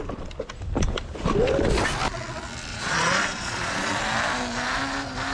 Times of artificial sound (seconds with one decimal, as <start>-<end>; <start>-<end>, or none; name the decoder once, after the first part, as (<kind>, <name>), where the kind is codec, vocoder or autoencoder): 2.7-4.0 (vocoder, Vocos)